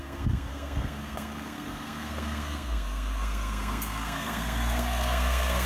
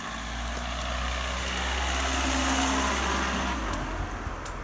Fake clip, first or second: first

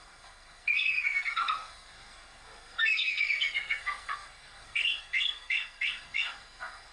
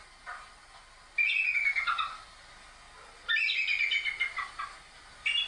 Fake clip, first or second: first